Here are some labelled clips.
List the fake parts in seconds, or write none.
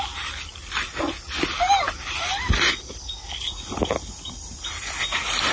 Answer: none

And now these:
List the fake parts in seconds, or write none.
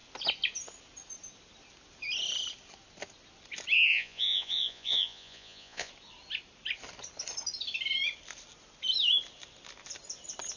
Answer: 3.9-5.9 (vocoder, Vocos)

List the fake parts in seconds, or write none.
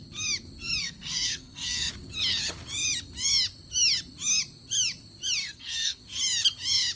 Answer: 0.8-1.9 (codec, SNAC); 5.4-6.0